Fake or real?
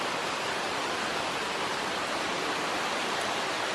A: real